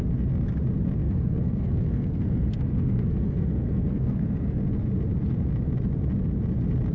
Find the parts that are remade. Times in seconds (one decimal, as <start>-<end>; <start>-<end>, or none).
1.0-4.6